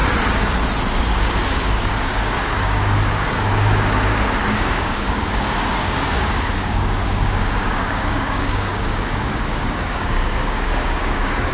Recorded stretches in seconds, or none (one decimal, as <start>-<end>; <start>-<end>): 0.0-1.0